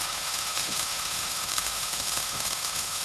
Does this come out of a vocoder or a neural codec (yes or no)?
yes